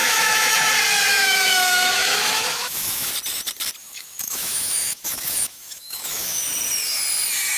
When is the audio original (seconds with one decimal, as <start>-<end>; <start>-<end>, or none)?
0.7-1.1; 3.1-3.8; 6.4-7.6

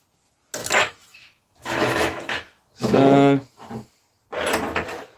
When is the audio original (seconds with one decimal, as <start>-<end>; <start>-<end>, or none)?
0.0-0.6; 3.7-5.2

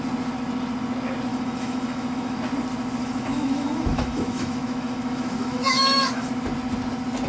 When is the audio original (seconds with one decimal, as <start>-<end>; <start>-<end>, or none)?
0.0-1.3; 2.4-3.0; 6.3-7.3

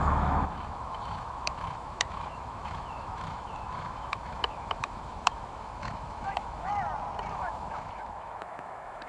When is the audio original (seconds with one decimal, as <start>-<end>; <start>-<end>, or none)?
6.7-7.3